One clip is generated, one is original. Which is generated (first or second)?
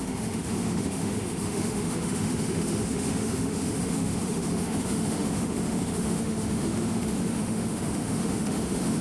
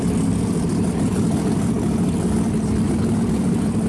first